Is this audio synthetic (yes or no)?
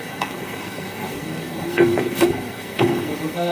yes